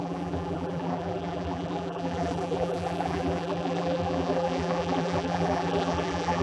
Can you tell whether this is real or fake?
fake